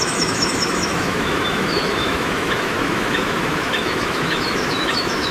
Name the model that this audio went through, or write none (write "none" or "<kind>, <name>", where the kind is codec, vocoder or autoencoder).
autoencoder, DAC-VAE